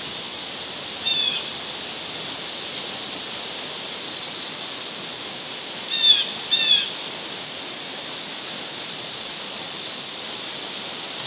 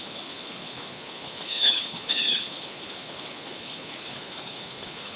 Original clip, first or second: first